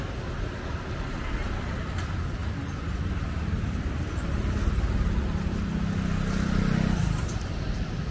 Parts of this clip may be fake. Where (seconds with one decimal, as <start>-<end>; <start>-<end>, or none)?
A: none